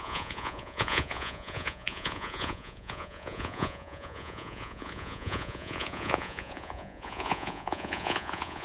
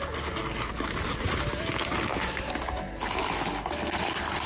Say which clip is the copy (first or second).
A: first